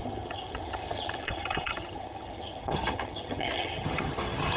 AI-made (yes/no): yes